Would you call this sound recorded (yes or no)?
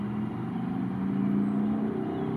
yes